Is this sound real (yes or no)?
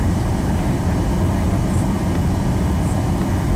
yes